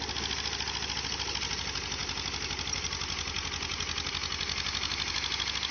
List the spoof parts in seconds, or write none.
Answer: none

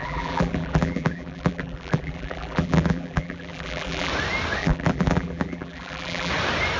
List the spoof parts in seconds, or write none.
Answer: 0.0-4.1 (vocoder, BigVGAN v2); 4.6-6.3

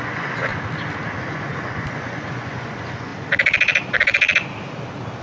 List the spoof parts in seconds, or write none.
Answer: 0.0-0.5 (vocoder, Vocos); 1.2-3.1

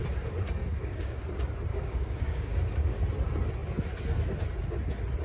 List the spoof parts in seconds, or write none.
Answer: 0.6-1.2 (codec, DAC); 1.7-3.0

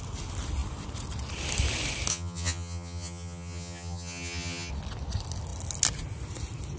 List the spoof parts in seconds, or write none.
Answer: 2.1-4.7 (vocoder, HiFi-GAN)